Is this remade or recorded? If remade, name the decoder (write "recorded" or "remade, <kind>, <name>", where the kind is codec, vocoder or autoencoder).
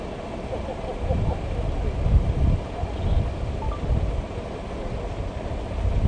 recorded